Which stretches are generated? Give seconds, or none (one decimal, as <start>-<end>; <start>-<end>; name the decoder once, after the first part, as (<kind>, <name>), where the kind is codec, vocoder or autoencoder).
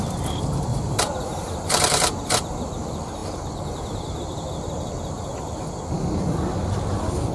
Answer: 0.7-2.6 (vocoder, BigVGAN v2)